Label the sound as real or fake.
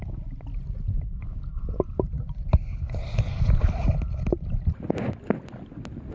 real